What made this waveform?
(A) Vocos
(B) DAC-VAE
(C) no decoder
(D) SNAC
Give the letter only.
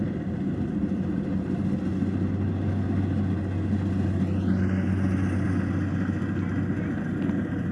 C